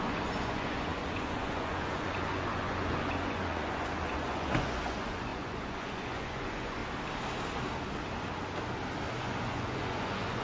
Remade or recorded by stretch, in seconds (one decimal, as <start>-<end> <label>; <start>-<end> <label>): 0.0-6.8 remade; 6.8-9.2 recorded; 9.2-10.4 remade